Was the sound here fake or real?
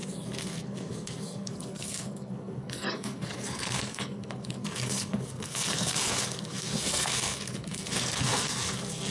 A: fake